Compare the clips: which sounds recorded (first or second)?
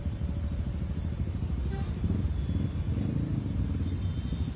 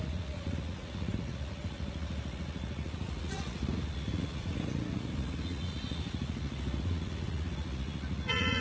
first